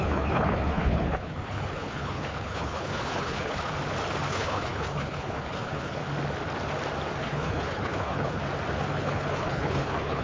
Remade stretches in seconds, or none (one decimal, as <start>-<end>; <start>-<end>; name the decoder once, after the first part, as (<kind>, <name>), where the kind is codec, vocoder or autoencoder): 0.0-3.7 (codec, HILCodec); 4.3-6.0; 7.2-8.4; 8.9-10.2